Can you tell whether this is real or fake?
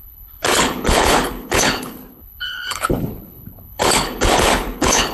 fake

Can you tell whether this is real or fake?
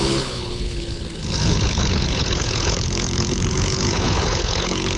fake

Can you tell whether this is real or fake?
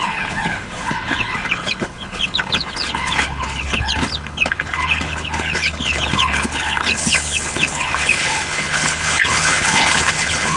fake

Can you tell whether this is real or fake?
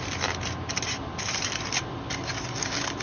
real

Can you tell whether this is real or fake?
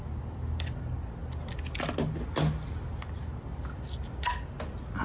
real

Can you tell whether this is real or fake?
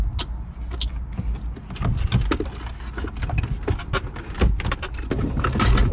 real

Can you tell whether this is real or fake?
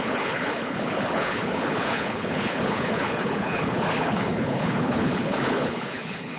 fake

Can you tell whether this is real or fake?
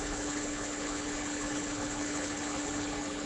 fake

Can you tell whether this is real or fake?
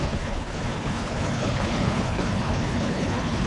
fake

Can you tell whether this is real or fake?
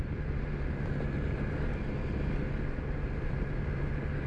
real